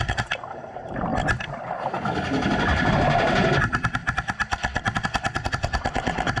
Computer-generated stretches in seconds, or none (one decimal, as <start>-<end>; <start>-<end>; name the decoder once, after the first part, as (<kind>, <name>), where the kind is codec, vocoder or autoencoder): 0.0-1.1 (vocoder, BigVGAN v2); 2.9-4.0; 5.5-6.4